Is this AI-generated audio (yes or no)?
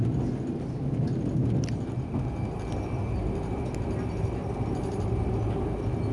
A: no